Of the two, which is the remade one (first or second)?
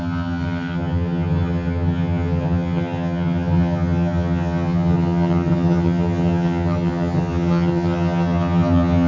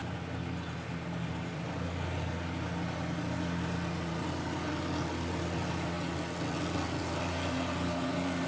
first